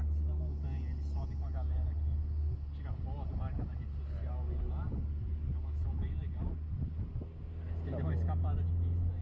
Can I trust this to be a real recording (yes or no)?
yes